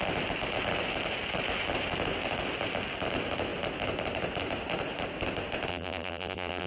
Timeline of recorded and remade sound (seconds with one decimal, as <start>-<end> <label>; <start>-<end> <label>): 0.0-5.7 recorded; 5.7-6.7 remade